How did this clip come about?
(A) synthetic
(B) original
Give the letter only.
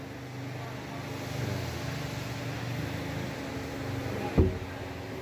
B